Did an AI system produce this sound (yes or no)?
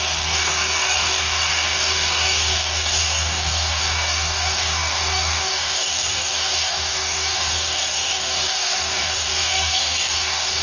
yes